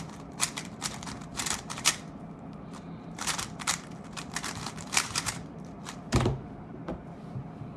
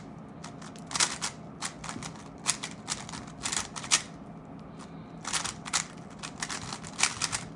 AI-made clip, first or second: first